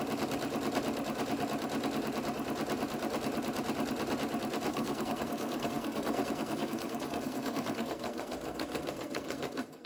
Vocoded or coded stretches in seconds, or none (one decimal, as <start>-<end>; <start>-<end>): 4.7-9.9